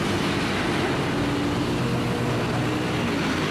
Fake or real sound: real